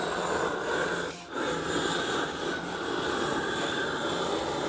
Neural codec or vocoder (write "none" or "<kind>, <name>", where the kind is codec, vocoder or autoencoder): none